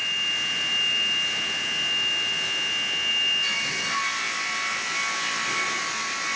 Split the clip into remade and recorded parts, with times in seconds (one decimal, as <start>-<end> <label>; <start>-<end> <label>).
0.0-6.4 recorded